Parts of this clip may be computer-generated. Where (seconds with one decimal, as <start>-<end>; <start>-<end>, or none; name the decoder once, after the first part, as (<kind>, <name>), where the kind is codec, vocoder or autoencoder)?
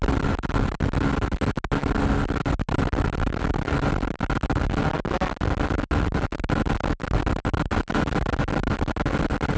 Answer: none